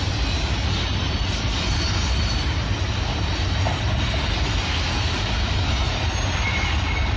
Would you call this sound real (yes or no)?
yes